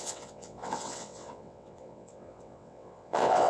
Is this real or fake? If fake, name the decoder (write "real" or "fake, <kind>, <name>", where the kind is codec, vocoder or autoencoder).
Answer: fake, vocoder, WaveNeXt